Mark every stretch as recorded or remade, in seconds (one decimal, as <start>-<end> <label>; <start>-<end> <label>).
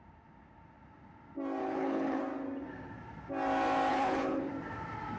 0.0-1.6 recorded; 1.6-2.2 remade; 2.2-3.9 recorded; 3.9-4.5 remade; 4.5-5.2 recorded